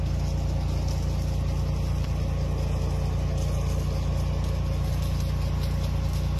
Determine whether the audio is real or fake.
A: real